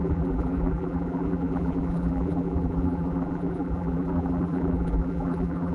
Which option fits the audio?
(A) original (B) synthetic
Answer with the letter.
B